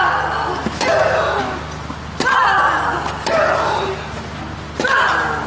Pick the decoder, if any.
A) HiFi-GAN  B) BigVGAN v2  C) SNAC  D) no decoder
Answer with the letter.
D